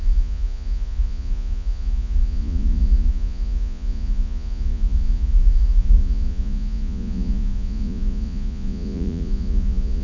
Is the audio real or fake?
fake